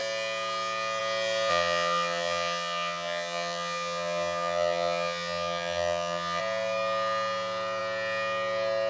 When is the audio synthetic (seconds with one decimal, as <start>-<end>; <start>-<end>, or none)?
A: 1.5-6.4

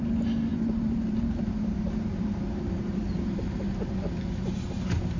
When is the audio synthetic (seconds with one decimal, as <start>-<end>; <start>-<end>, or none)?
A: 0.5-3.4

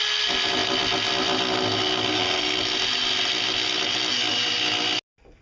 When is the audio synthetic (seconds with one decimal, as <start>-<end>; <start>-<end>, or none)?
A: none

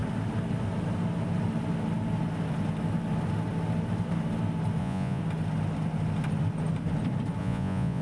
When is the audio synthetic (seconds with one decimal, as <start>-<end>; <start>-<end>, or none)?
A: 4.8-5.2; 7.4-8.0